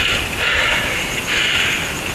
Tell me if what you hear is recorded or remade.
recorded